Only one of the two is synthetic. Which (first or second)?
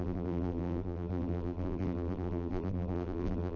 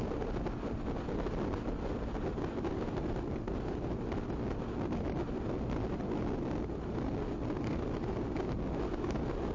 first